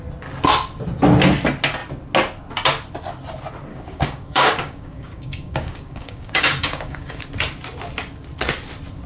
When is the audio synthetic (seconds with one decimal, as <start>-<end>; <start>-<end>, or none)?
3.7-7.2